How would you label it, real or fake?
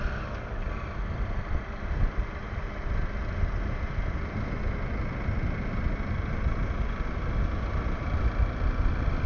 real